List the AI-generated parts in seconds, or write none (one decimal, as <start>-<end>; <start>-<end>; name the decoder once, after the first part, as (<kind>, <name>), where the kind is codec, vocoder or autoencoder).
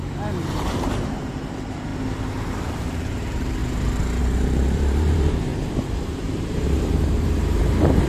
0.0-1.9 (vocoder, BigVGAN v2); 2.5-3.6; 4.2-5.5; 6.1-8.1